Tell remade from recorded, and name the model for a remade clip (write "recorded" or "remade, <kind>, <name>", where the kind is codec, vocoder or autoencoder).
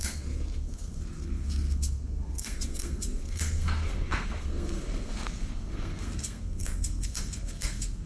remade, codec, SNAC